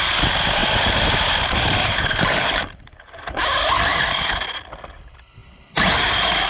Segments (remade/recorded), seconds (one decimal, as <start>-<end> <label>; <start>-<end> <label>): 0.0-0.6 recorded; 0.6-4.2 remade; 4.2-6.5 recorded